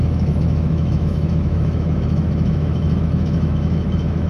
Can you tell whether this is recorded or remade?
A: remade